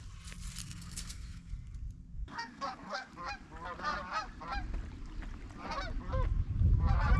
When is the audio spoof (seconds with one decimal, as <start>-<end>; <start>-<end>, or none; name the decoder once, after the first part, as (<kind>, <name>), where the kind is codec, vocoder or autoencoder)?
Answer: 0.6-1.5 (codec, SNAC); 2.1-3.1